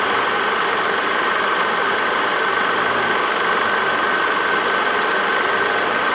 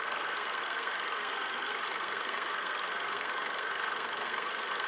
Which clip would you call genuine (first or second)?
first